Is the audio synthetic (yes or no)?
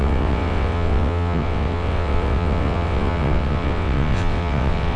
yes